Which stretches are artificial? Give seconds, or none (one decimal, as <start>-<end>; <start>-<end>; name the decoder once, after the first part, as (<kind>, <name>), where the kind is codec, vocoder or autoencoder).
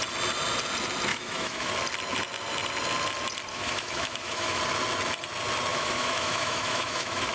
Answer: 1.1-1.7 (autoencoder, DAC-VAE); 3.5-4.6; 5.7-7.3